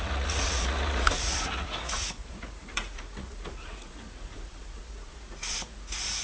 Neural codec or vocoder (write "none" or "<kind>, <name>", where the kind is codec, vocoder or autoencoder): vocoder, Vocos